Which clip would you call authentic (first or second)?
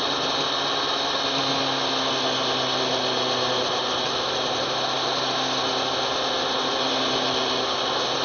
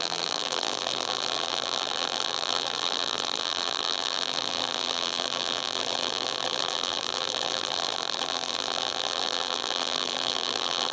first